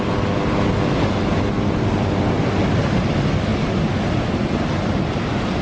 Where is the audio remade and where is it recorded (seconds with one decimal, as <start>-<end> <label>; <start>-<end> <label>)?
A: 0.0-5.6 recorded